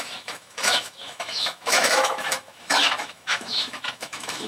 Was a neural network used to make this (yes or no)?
yes